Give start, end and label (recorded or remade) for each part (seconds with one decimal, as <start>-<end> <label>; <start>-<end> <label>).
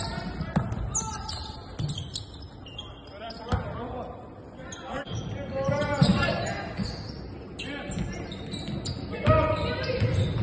0.0-10.4 recorded